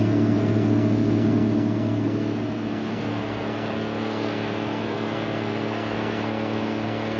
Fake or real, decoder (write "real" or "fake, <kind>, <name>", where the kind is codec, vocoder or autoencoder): fake, codec, SNAC